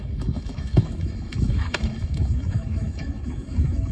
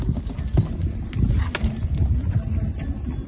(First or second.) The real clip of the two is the second